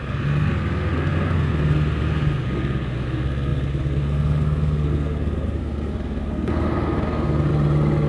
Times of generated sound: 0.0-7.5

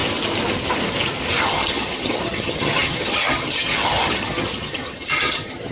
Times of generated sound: 1.4-5.7

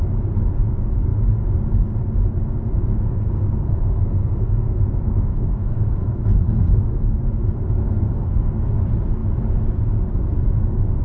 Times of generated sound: 2.9-7.2; 7.8-8.5

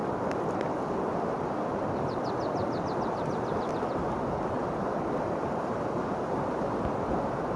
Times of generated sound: none

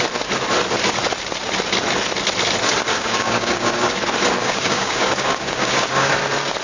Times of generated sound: 2.9-3.9; 4.4-6.1

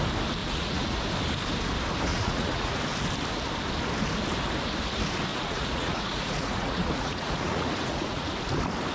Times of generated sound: 0.4-1.0; 2.1-2.8; 5.3-8.3